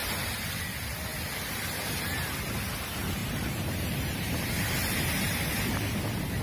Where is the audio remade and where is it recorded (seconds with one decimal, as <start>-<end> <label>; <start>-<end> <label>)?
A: 0.0-3.2 recorded; 3.2-5.7 remade; 5.7-6.4 recorded